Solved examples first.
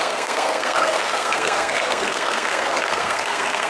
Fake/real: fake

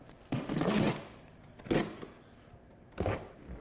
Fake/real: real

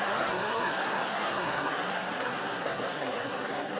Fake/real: fake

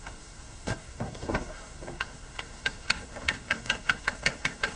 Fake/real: fake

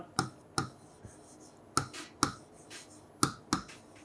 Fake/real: real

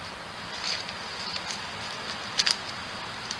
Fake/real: real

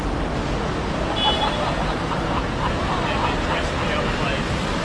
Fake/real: real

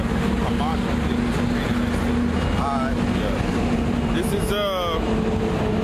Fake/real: real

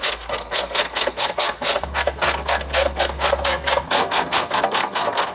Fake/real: fake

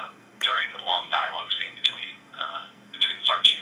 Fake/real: fake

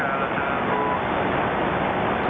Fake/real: real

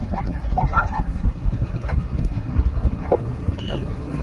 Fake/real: fake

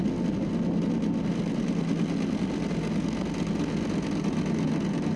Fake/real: real